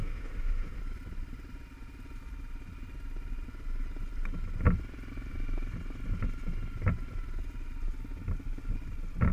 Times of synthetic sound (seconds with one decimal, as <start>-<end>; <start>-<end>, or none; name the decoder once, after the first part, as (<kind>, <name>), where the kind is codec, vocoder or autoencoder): 0.0-0.8 (autoencoder, DAC-VAE)